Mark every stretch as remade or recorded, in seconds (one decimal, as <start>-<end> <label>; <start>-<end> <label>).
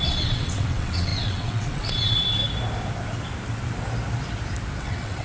0.0-2.4 remade; 2.4-4.8 recorded; 4.8-5.2 remade